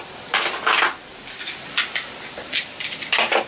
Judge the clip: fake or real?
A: real